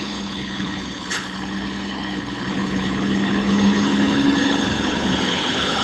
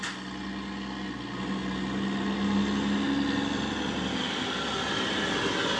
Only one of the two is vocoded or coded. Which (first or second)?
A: first